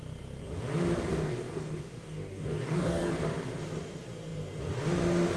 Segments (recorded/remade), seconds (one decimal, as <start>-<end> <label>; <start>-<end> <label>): 0.0-1.1 recorded; 1.1-3.1 remade; 3.1-5.4 recorded